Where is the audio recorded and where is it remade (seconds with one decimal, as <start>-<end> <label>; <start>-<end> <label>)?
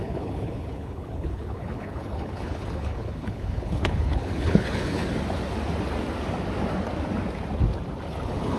0.0-5.0 remade; 5.0-8.2 recorded; 8.2-8.6 remade